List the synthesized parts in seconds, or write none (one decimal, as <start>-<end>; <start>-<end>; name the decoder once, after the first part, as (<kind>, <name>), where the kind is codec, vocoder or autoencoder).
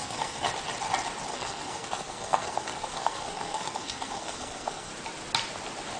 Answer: 0.0-0.5 (codec, SNAC); 1.3-4.9